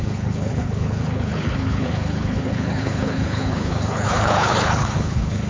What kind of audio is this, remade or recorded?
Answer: remade